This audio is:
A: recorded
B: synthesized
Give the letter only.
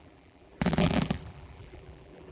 B